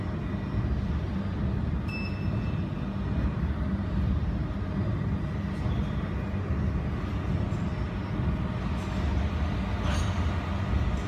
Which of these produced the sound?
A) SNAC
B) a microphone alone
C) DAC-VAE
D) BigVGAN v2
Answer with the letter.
B